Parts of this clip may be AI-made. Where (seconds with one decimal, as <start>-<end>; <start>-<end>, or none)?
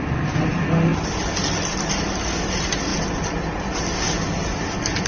none